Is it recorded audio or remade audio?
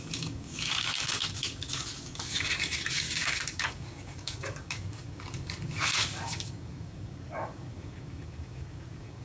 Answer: remade